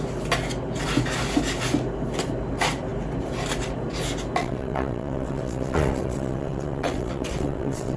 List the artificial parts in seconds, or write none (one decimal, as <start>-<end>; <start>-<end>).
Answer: 4.4-8.0